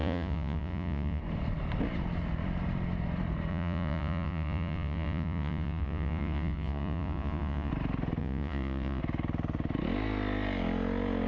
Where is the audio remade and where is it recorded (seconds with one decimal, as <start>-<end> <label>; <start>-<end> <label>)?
0.0-1.2 remade; 1.2-3.5 recorded; 3.5-7.7 remade; 7.7-8.2 recorded; 8.2-9.0 remade; 9.0-11.3 recorded